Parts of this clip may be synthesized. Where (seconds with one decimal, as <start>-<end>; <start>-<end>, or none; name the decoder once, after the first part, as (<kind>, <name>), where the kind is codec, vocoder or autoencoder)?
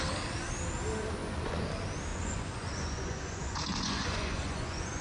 1.2-1.7 (vocoder, Vocos); 2.1-5.0